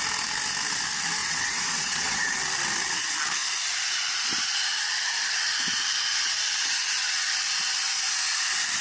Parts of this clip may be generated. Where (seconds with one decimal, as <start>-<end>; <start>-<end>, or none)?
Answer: 1.2-2.3